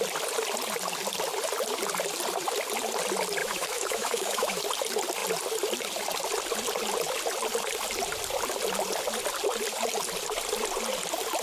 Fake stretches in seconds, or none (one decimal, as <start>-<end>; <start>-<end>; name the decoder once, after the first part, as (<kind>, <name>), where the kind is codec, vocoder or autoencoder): 3.4-4.6 (autoencoder, DAC-VAE)

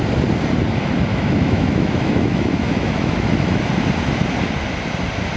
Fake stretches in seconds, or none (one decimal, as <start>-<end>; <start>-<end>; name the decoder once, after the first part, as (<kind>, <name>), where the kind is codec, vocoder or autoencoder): 1.1-3.6 (autoencoder, DAC-VAE)

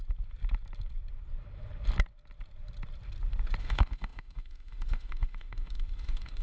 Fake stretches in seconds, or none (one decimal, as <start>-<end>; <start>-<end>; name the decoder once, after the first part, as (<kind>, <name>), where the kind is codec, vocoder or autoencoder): 3.6-6.4 (autoencoder, DAC-VAE)

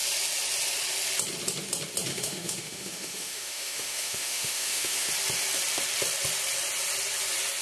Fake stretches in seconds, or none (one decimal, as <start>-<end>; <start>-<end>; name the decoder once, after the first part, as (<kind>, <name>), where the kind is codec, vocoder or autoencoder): 2.1-5.1 (autoencoder, DAC-VAE)